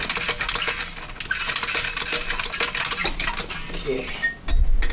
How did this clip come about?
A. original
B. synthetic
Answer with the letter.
A